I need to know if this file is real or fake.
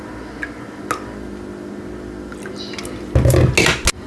real